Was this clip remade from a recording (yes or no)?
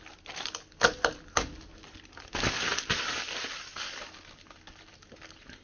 no